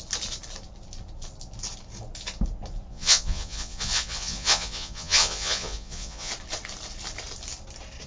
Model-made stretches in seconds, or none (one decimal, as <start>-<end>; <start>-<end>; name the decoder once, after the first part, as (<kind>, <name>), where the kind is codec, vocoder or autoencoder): 2.9-6.3 (vocoder, Vocos)